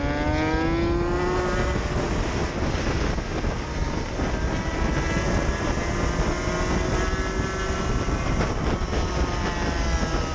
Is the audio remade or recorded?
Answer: recorded